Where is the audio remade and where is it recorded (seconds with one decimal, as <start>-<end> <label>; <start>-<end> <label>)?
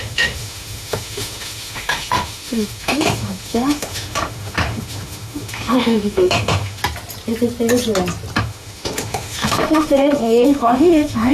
0.0-6.8 remade; 6.8-8.4 recorded; 8.4-11.3 remade